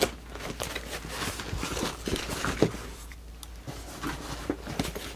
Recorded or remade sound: recorded